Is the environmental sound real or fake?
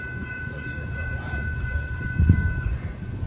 fake